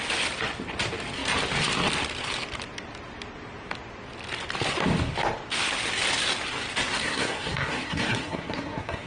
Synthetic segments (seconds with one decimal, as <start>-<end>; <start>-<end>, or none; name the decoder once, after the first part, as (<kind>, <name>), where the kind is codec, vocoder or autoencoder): 7.0-9.1 (codec, SNAC)

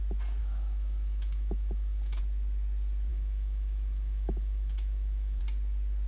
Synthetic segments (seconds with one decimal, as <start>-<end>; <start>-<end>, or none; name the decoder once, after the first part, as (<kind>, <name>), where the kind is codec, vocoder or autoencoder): 0.4-2.2 (autoencoder, DAC-VAE); 3.1-5.4

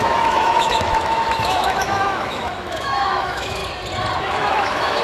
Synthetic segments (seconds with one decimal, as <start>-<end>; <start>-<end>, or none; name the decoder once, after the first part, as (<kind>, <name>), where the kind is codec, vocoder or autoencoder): 0.0-3.6 (autoencoder, DAC-VAE); 4.2-5.0

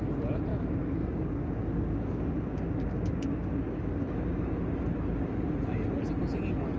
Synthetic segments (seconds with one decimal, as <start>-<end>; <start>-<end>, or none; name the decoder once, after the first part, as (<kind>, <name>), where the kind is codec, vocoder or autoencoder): 0.5-4.6 (codec, DAC)